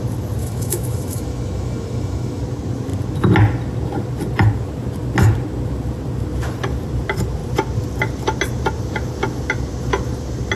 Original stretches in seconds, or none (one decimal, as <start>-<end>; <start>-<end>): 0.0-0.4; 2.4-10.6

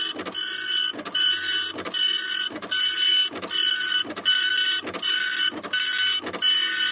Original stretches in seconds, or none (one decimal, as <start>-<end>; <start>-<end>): 0.0-6.9

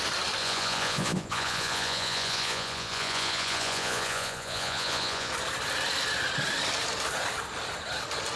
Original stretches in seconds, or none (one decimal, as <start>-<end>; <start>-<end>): 0.0-0.4; 5.3-8.4

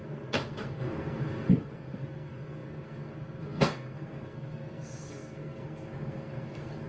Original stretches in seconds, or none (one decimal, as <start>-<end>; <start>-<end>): none